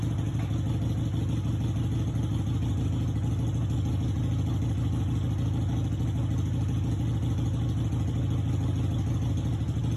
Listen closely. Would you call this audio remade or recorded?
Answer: recorded